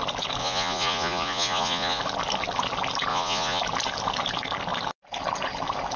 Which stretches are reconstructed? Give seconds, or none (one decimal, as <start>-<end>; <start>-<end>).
0.4-2.0; 3.1-3.6